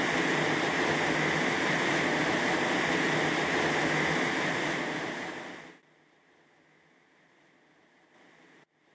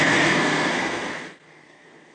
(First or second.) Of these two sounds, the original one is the first